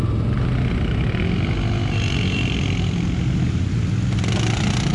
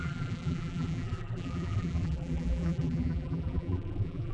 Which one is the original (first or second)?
first